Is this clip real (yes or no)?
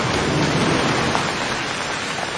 no